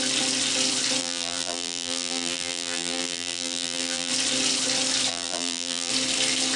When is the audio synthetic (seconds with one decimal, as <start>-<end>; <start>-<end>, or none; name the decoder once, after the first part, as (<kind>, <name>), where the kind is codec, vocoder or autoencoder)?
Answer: 1.0-4.1 (vocoder, BigVGAN v2); 5.1-5.9